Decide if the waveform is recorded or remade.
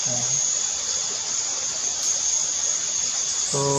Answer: recorded